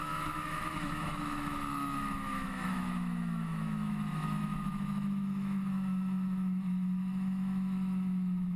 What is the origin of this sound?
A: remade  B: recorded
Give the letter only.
A